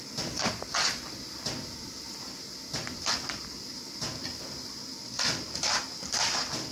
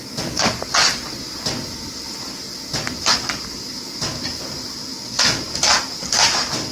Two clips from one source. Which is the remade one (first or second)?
first